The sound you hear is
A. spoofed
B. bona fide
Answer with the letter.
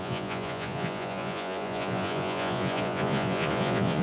A